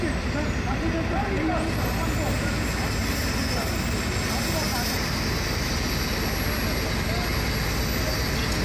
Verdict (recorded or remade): recorded